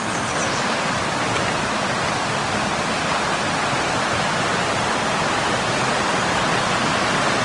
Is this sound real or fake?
real